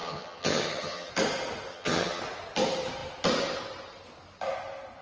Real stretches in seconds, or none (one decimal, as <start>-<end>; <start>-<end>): 1.1-1.7; 2.2-5.0